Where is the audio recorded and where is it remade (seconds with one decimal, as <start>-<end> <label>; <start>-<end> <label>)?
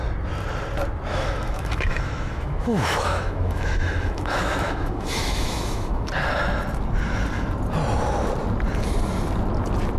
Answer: 0.0-1.1 recorded; 1.1-6.1 remade; 6.1-10.0 recorded